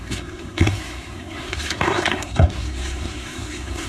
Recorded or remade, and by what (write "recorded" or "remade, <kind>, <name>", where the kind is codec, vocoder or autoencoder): remade, codec, SNAC